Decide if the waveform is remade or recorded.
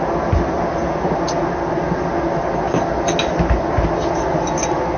recorded